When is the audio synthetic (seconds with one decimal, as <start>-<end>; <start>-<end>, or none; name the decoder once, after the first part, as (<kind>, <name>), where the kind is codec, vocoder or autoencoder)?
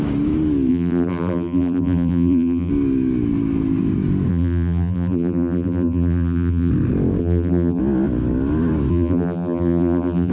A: 0.7-2.7 (vocoder, BigVGAN v2); 4.3-6.7; 7.2-7.8; 8.9-10.3